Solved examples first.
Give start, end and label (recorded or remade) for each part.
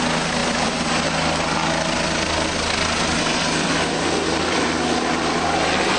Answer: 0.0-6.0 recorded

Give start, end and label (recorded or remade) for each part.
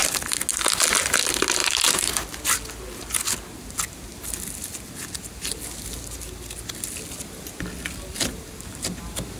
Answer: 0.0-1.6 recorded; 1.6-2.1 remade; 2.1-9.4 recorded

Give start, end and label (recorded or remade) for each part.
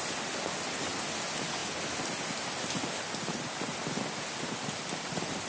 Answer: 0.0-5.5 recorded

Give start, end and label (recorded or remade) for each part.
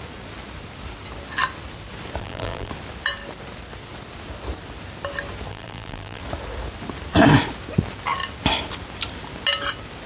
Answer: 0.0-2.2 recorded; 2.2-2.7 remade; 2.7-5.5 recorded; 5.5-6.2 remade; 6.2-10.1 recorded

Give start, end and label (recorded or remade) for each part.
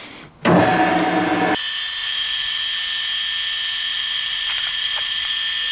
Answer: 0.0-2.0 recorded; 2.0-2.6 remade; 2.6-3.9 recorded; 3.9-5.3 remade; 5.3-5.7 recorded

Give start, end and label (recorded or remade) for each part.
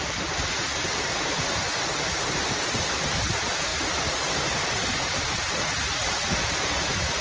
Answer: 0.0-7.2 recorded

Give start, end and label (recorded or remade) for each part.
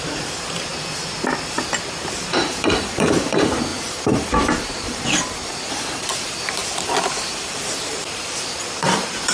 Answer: 0.0-0.7 remade; 0.7-1.7 recorded; 1.7-6.6 remade; 6.6-7.2 recorded; 7.2-9.3 remade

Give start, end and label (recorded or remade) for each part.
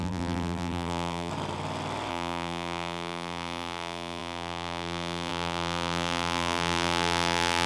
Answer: 0.0-1.3 remade; 1.3-2.1 recorded; 2.1-7.7 remade